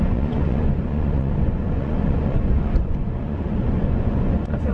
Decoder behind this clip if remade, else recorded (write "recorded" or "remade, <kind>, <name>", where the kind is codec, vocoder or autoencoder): remade, vocoder, Vocos